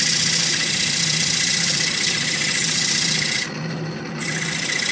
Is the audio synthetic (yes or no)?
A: no